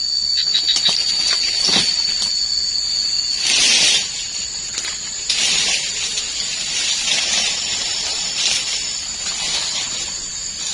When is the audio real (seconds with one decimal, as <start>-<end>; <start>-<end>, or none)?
0.0-10.7